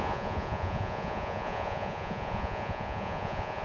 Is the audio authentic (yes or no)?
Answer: no